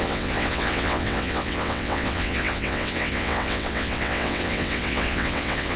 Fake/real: fake